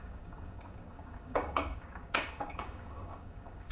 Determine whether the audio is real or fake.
fake